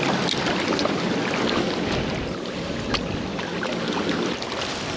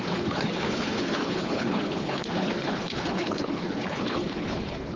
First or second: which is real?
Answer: first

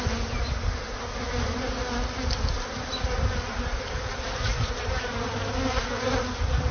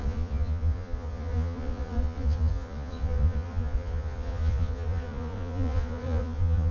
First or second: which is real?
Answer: first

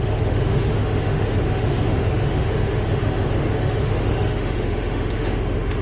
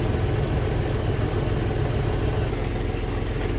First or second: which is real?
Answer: second